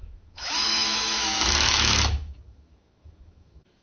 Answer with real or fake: fake